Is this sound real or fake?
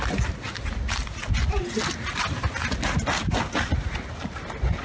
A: real